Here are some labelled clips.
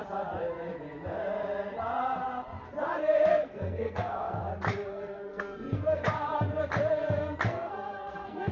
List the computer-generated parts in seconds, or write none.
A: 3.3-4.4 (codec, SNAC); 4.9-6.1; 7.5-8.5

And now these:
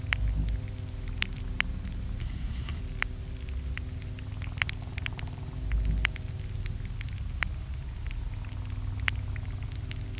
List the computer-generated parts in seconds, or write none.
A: 2.2-2.8 (codec, SNAC)

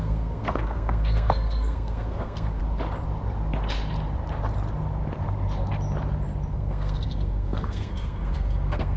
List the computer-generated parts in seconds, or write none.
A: 0.0-2.6 (codec, SNAC); 6.5-9.0

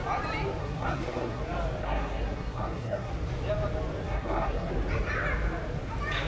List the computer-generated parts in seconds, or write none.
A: 0.6-1.4 (codec, SNAC); 1.8-3.1; 4.0-4.7

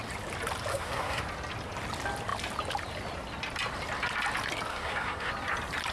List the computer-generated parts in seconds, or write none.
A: 0.7-1.2 (codec, SNAC); 4.7-5.3

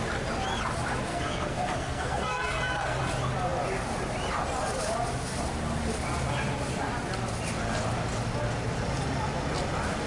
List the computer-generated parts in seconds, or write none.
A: 1.1-3.0 (codec, SNAC)